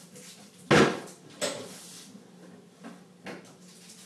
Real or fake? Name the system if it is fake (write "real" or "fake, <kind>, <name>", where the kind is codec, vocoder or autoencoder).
real